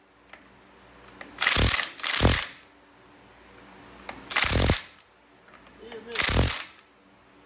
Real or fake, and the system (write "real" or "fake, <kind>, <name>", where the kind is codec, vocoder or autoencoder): real